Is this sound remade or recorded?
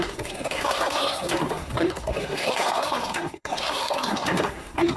remade